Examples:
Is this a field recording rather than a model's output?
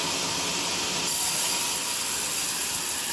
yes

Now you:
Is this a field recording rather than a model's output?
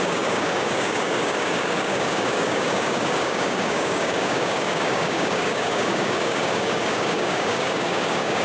no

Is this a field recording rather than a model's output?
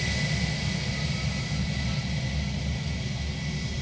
yes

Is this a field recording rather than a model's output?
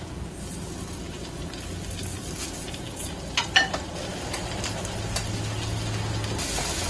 yes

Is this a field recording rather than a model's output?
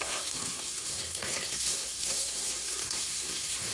no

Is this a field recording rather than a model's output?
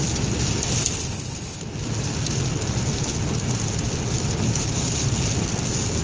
yes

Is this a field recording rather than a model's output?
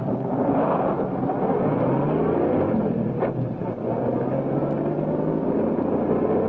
yes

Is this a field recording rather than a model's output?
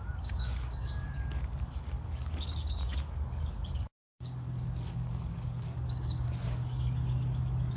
no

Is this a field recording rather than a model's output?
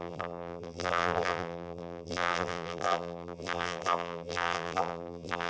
no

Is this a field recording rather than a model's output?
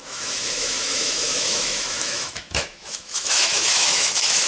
no